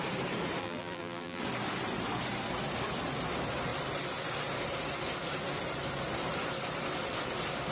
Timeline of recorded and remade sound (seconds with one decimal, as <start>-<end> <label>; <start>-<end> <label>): 0.0-0.6 recorded; 0.6-1.4 remade; 1.4-7.7 recorded